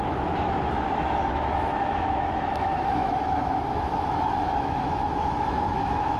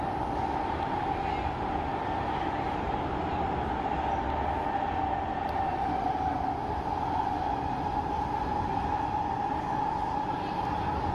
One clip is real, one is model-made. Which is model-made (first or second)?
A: first